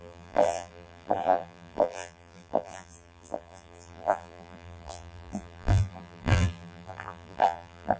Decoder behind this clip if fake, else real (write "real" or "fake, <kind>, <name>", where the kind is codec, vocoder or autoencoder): fake, vocoder, BigVGAN v2